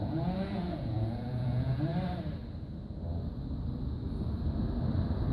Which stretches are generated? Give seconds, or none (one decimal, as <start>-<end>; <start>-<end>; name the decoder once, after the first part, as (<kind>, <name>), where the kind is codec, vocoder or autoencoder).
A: 0.0-1.9 (vocoder, Vocos)